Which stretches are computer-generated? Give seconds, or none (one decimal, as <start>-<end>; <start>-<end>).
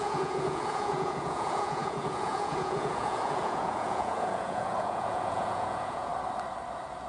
0.0-6.1